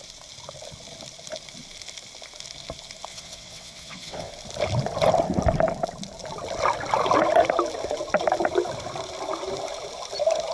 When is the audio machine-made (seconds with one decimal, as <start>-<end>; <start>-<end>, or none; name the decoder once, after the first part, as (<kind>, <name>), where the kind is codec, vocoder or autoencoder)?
3.1-4.3 (vocoder, WaveNeXt)